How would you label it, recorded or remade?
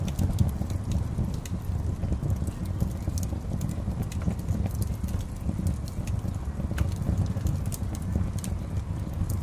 recorded